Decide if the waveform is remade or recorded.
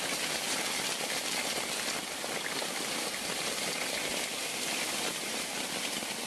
recorded